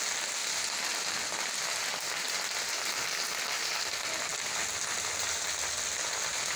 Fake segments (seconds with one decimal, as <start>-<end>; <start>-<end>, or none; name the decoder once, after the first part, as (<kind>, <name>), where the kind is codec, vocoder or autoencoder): 0.0-0.4 (vocoder, BigVGAN v2); 2.6-6.6